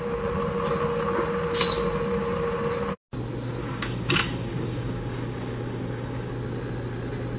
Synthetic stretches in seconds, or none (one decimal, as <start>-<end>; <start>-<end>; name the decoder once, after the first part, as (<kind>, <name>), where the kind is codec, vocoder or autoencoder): 3.6-6.3 (codec, DAC)